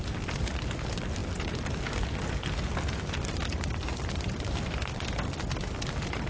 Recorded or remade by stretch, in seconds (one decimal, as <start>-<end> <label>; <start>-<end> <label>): 0.0-6.3 recorded